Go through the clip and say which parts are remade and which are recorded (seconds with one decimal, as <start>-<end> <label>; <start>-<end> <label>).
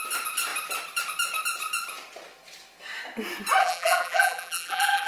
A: 0.0-3.6 recorded; 3.6-5.1 remade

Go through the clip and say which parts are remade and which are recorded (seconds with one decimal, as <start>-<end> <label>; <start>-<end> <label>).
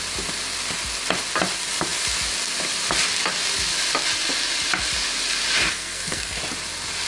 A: 0.0-5.7 recorded; 5.7-6.4 remade; 6.4-7.1 recorded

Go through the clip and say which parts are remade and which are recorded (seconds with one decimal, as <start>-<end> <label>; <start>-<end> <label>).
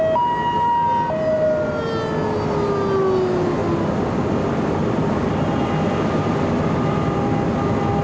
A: 0.0-8.0 recorded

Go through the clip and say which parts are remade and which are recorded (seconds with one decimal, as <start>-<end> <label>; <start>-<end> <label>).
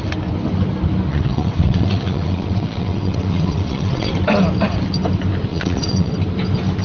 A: 0.0-1.1 recorded; 1.1-4.1 remade; 4.1-5.5 recorded; 5.5-6.1 remade; 6.1-6.8 recorded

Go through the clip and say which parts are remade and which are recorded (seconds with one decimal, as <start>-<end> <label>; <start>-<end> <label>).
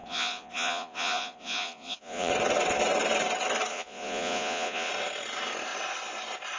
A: 0.0-2.3 remade; 2.3-3.7 recorded; 3.7-4.9 remade; 4.9-6.6 recorded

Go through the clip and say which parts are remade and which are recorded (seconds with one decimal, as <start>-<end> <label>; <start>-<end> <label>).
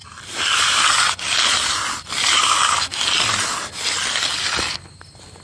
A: 0.0-5.4 recorded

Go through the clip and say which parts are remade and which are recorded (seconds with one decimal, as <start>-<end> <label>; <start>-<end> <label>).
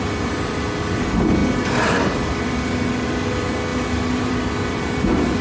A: 0.0-5.4 recorded